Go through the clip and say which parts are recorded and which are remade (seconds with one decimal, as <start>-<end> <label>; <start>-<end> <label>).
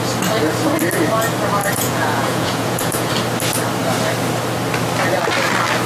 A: 0.0-1.6 recorded; 1.6-3.1 remade; 3.1-5.9 recorded